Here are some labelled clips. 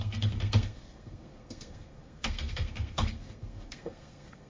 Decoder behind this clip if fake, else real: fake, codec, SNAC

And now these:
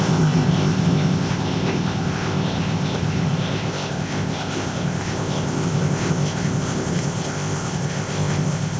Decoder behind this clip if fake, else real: fake, codec, ZipCodec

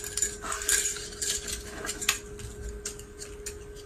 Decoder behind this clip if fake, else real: real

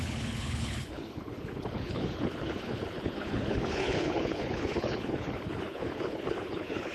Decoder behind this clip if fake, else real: fake, codec, HILCodec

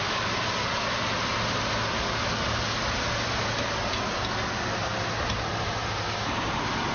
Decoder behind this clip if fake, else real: real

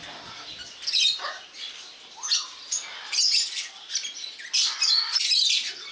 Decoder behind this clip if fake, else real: real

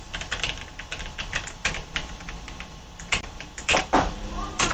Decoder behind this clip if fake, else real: fake, vocoder, BigVGAN v2